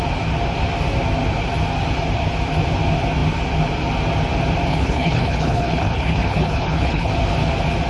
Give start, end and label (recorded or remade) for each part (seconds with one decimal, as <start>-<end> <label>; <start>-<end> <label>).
0.0-4.7 recorded; 4.7-7.1 remade; 7.1-7.9 recorded